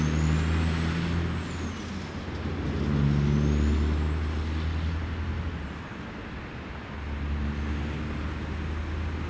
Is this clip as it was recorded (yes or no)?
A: yes